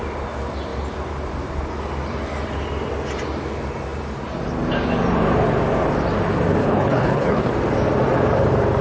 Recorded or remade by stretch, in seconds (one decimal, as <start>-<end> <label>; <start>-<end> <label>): 0.0-6.6 recorded; 6.6-7.5 remade; 7.5-8.8 recorded